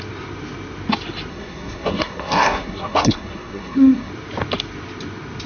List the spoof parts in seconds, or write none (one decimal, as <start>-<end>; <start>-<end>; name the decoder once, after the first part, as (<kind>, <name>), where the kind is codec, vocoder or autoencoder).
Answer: 1.3-4.1 (codec, SNAC)